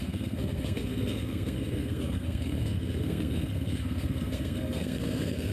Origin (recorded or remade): remade